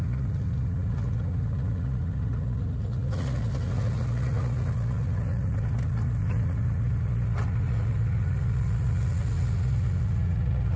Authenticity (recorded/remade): remade